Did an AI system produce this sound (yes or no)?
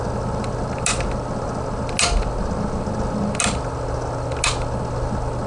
no